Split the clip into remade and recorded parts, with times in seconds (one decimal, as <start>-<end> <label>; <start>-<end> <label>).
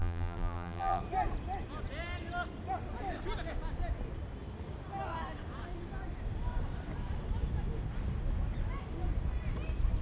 0.0-1.0 remade; 1.0-10.0 recorded